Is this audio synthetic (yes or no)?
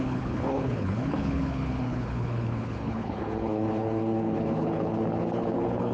yes